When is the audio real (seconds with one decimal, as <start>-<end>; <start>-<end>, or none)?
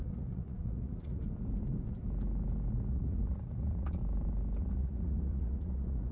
1.2-2.9; 4.0-4.6